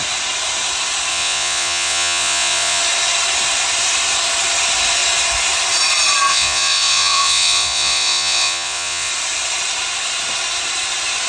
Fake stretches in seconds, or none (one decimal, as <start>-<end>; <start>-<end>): 1.1-2.8; 6.3-9.1

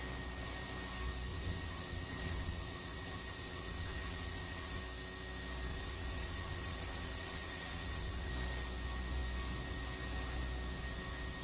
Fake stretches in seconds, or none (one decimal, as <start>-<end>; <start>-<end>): 1.3-4.8; 5.7-8.3

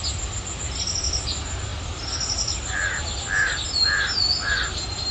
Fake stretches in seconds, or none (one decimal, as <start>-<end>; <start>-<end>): none